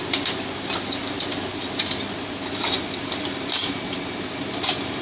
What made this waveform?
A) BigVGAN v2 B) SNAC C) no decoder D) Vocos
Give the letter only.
A